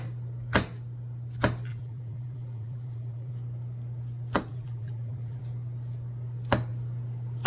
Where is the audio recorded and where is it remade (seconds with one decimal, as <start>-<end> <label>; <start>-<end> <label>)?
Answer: 0.0-1.7 recorded; 1.7-3.3 remade; 3.3-4.5 recorded; 4.5-5.4 remade; 5.4-7.5 recorded